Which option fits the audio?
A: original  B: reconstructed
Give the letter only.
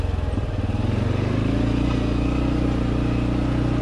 A